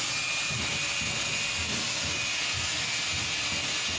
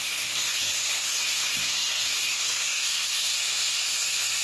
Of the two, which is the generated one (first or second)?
second